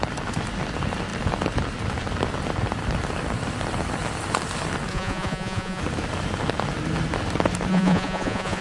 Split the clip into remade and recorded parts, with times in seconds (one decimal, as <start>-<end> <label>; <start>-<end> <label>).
0.0-4.9 recorded; 4.9-5.8 remade; 5.8-7.7 recorded; 7.7-8.6 remade